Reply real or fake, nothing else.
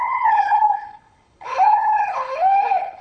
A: fake